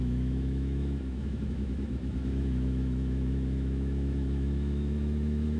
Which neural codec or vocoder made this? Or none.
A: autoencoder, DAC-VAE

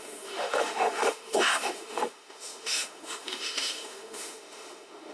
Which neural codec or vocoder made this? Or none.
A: autoencoder, DAC-VAE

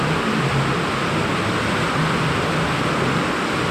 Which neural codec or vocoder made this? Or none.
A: none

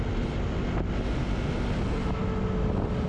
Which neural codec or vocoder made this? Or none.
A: none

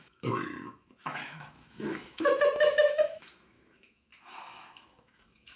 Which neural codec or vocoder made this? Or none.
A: autoencoder, DAC-VAE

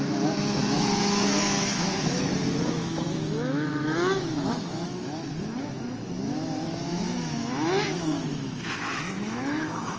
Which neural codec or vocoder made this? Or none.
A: autoencoder, DAC-VAE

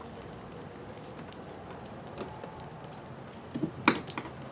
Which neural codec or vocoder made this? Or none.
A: none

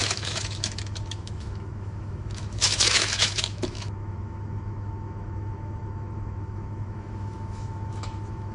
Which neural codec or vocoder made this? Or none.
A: autoencoder, DAC-VAE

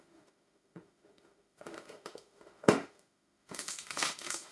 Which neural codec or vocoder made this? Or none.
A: autoencoder, DAC-VAE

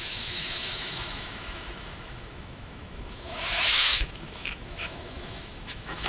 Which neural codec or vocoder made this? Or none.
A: autoencoder, DAC-VAE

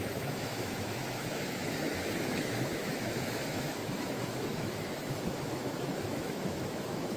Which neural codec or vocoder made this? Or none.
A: autoencoder, DAC-VAE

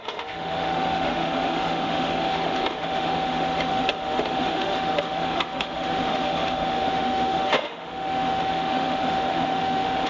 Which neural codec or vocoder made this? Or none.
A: autoencoder, DAC-VAE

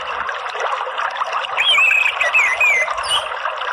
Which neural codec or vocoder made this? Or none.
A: none